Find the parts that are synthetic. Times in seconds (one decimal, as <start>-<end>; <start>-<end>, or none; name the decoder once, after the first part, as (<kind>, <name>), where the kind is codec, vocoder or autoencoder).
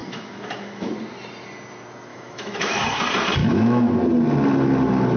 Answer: 0.0-0.9 (autoencoder, DAC-VAE); 2.1-2.8; 3.4-3.9